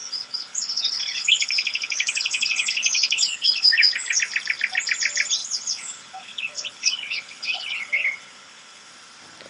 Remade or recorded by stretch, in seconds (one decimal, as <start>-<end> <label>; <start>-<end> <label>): 0.0-4.2 remade; 4.2-5.4 recorded; 5.4-8.9 remade; 8.9-9.5 recorded